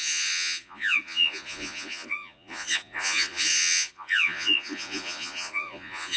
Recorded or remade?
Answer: remade